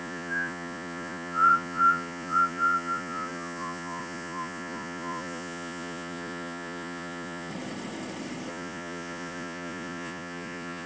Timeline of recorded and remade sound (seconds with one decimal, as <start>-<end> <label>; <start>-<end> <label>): 0.0-7.5 remade; 7.5-8.5 recorded; 8.5-10.9 remade